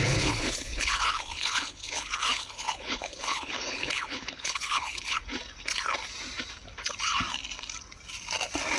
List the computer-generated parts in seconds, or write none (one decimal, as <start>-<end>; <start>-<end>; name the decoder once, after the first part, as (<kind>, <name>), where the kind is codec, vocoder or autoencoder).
0.0-5.2 (codec, HILCodec)